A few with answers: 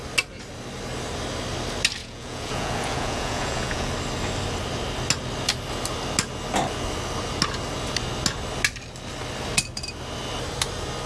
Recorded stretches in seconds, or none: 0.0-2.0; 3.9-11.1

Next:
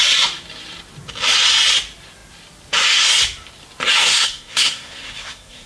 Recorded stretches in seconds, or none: 0.0-4.0

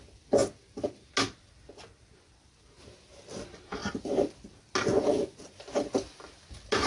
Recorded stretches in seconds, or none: 0.0-6.9

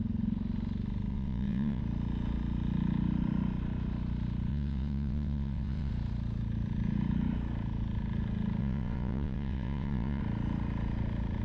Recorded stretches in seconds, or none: 0.0-1.1; 1.8-4.5; 5.9-8.6; 10.2-11.4

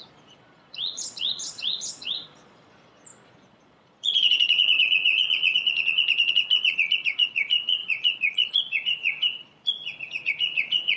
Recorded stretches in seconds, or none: none

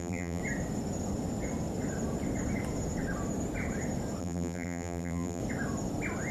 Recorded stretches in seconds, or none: 0.4-4.2; 5.4-6.3

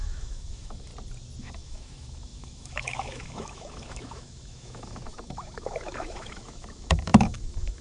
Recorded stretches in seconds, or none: 0.9-1.4

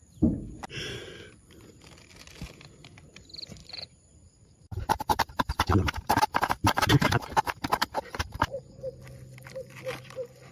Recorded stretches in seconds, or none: 0.0-3.6; 8.6-10.5